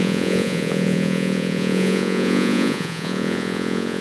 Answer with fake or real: fake